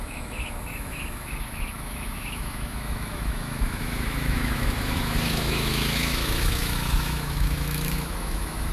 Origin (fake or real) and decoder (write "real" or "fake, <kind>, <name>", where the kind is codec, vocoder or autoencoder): fake, autoencoder, DAC-VAE